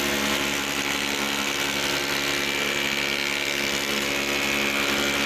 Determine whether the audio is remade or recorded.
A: recorded